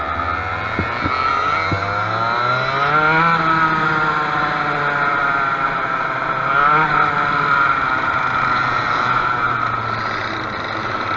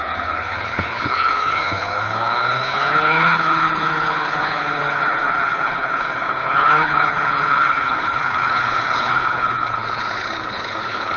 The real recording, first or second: first